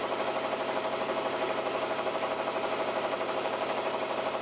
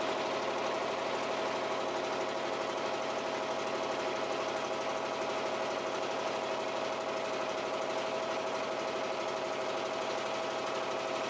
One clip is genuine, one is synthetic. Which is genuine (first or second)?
second